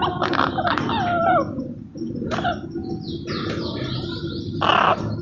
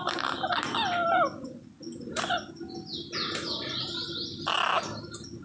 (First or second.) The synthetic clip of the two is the first